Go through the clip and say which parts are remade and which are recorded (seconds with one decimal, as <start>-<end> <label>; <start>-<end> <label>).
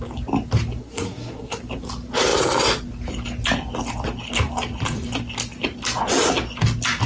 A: 0.0-0.8 recorded; 0.8-1.6 remade; 1.6-7.1 recorded